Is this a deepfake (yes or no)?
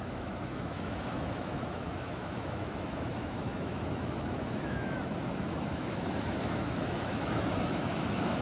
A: yes